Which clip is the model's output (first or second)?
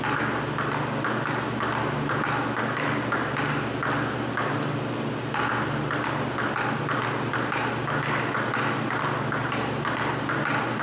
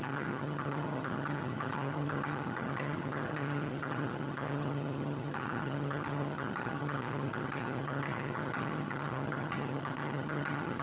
second